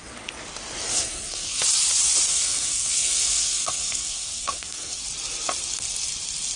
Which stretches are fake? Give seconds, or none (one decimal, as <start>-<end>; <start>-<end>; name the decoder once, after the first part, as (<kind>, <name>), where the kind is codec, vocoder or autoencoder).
0.9-1.6 (codec, SNAC); 2.3-5.0

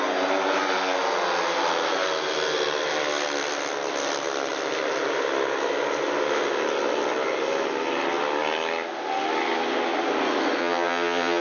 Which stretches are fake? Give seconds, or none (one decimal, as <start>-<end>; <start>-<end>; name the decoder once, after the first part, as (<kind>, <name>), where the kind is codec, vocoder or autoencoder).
10.6-11.4 (vocoder, HiFi-GAN)

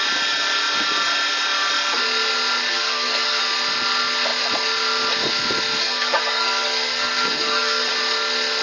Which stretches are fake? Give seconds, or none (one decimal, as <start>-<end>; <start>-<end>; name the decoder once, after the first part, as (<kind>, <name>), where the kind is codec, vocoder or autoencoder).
2.7-3.4 (codec, SNAC); 5.8-7.9

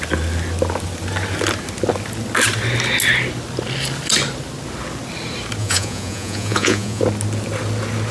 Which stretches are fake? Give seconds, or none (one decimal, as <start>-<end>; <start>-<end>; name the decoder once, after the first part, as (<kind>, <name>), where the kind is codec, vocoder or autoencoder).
5.6-7.0 (vocoder, Vocos)

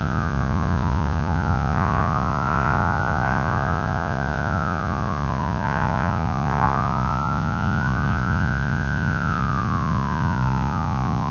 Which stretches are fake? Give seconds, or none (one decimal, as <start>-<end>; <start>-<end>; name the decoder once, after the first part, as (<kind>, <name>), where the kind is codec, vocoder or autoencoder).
0.0-11.3 (vocoder, Vocos)

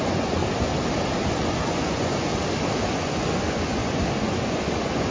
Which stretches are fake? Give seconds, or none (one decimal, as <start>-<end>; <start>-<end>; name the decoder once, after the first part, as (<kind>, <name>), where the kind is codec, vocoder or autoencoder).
0.0-0.4 (vocoder, Vocos); 1.3-2.3; 2.9-5.1

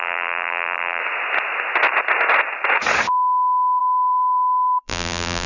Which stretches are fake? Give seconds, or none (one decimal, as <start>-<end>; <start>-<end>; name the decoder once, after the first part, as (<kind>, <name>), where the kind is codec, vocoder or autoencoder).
0.0-1.0 (vocoder, BigVGAN v2); 3.8-5.5